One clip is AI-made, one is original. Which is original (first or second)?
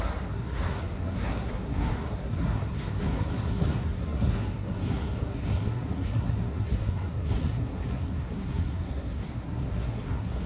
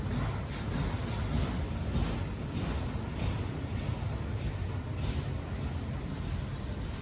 second